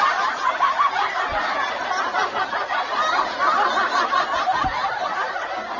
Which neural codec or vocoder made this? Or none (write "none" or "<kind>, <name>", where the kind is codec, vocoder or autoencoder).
none